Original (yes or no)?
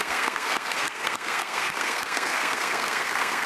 no